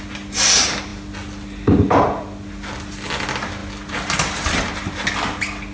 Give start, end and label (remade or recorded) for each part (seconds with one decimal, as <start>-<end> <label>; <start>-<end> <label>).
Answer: 0.0-5.7 recorded